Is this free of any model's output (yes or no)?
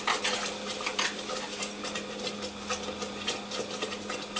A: yes